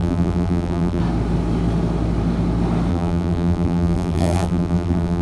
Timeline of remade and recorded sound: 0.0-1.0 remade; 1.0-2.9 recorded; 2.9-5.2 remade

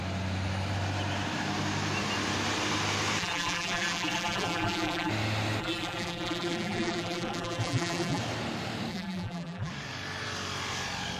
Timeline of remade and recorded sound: 0.0-3.2 recorded; 3.2-5.1 remade; 5.1-5.6 recorded; 5.6-8.2 remade; 8.2-8.9 recorded; 8.9-9.7 remade; 9.7-11.2 recorded

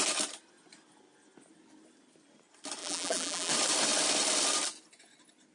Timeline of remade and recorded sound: 0.0-2.8 recorded; 2.8-3.5 remade; 3.5-5.5 recorded

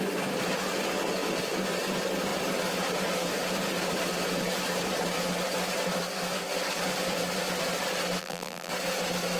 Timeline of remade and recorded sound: 0.0-8.2 recorded; 8.2-8.7 remade; 8.7-9.4 recorded